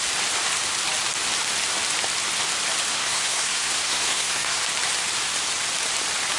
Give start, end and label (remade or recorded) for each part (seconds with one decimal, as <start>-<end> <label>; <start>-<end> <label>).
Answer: 0.0-2.9 recorded; 2.9-4.6 remade; 4.6-6.4 recorded